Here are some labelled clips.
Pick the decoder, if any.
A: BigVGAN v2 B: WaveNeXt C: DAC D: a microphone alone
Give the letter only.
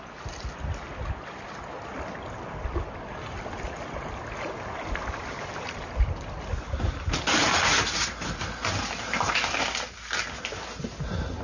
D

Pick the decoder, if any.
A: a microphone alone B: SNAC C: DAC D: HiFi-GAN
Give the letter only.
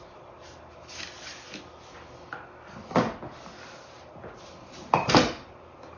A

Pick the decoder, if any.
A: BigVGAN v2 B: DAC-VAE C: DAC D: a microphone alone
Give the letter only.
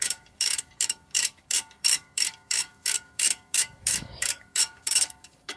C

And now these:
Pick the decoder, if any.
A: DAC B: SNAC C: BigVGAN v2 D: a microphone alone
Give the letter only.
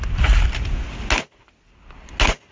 D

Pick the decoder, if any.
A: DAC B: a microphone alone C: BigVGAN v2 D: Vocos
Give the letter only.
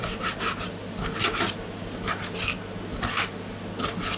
B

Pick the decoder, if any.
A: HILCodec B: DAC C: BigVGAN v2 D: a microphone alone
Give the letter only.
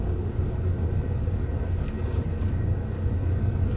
B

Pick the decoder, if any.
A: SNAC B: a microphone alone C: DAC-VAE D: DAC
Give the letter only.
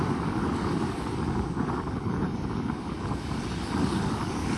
D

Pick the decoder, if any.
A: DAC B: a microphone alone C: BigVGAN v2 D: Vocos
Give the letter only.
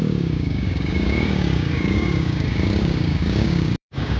A